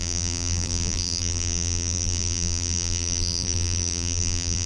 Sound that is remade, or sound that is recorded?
remade